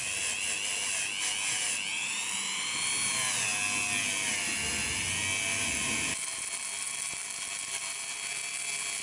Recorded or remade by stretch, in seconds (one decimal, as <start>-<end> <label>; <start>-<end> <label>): 0.0-1.9 recorded; 1.9-2.9 remade; 2.9-5.5 recorded; 5.5-6.1 remade; 6.1-9.0 recorded